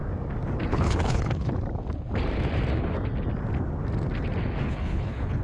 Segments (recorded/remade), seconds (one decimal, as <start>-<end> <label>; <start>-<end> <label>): 0.0-0.7 recorded; 0.7-1.5 remade; 1.5-4.7 recorded; 4.7-5.4 remade